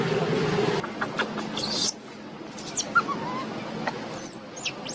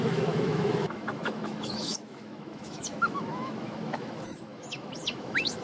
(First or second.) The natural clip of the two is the first